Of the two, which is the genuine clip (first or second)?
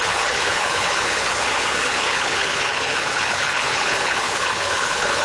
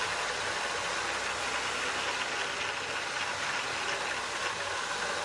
second